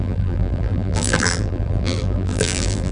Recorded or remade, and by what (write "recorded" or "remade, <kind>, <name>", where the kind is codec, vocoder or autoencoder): remade, vocoder, BigVGAN v2